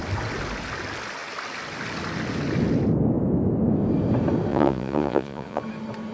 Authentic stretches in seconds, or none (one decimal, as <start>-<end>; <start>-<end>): 0.0-4.5; 5.6-6.1